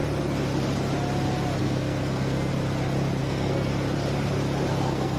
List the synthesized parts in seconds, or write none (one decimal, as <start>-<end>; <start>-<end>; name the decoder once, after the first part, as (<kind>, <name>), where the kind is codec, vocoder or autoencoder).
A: 1.6-2.5 (codec, SNAC); 3.2-3.7; 4.7-5.2